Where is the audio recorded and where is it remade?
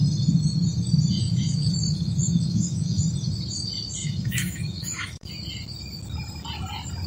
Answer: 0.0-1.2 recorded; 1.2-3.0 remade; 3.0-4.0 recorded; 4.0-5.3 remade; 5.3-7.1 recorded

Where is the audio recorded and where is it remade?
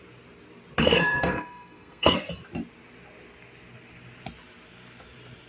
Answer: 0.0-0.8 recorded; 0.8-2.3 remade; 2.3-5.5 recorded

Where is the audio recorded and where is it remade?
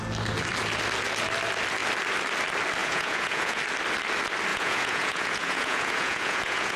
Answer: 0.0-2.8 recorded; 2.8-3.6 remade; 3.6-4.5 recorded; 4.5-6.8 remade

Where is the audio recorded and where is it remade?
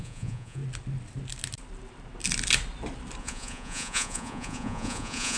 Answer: 0.0-0.6 remade; 0.6-3.2 recorded; 3.2-5.4 remade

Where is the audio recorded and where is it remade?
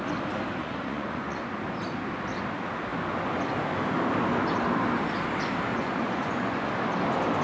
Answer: 0.0-0.6 recorded; 0.6-1.4 remade; 1.4-5.7 recorded; 5.7-6.7 remade; 6.7-7.4 recorded